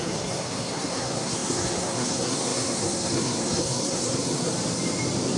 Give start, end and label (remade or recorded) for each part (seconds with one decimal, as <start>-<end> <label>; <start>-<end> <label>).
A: 0.0-4.5 remade; 4.5-5.4 recorded